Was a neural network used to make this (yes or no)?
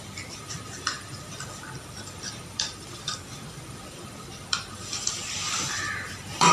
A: yes